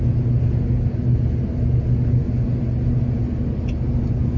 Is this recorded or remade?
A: recorded